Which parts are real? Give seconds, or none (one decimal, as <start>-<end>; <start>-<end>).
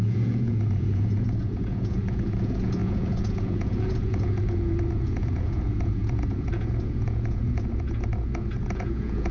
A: none